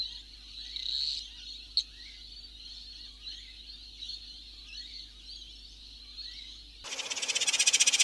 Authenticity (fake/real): real